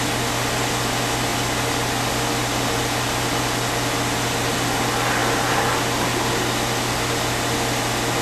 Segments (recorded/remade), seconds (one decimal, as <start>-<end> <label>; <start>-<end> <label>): 0.0-8.2 recorded